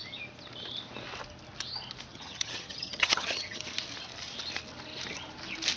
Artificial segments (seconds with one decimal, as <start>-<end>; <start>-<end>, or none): 2.1-3.6